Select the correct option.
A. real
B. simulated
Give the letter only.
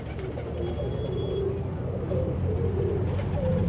A